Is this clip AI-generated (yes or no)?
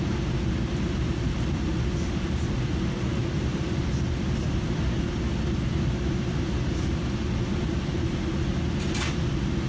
no